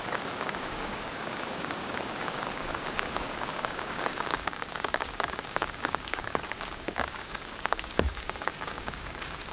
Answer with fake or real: fake